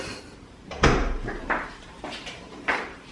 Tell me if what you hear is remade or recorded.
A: remade